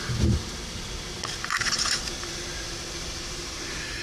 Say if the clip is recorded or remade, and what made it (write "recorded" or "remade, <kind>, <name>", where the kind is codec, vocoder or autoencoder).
remade, vocoder, BigVGAN v2